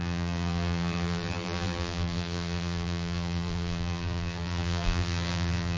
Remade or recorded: remade